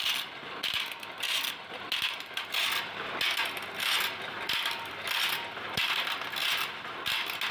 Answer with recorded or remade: recorded